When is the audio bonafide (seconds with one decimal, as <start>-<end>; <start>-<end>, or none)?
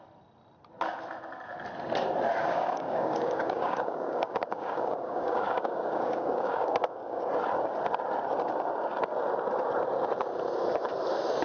0.0-2.4; 7.3-11.4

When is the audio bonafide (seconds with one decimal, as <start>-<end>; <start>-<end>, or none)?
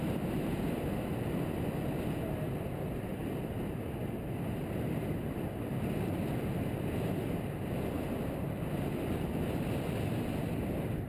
0.0-11.1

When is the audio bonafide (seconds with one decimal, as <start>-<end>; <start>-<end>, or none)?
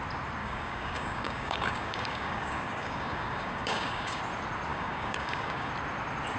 0.0-0.4; 4.2-4.7; 5.7-6.4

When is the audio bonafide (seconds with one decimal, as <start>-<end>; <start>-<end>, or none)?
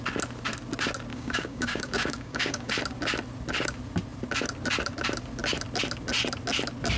0.0-1.1; 2.7-7.0